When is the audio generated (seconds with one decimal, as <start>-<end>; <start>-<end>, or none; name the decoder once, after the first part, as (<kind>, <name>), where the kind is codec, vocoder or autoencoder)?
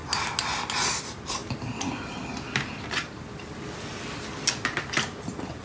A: none